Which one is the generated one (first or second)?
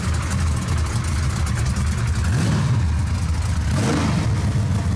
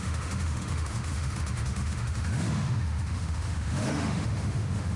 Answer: second